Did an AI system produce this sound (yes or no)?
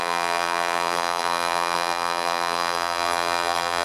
yes